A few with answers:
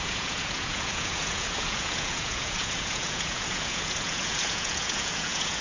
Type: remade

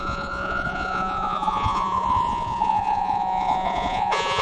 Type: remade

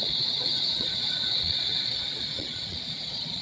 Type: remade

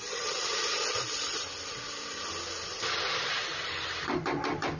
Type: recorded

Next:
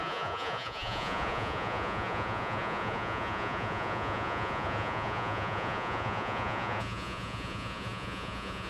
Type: remade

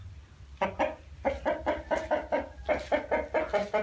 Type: recorded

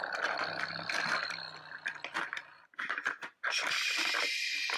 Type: recorded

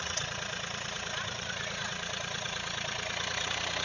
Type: remade